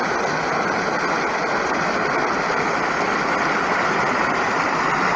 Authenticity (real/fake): real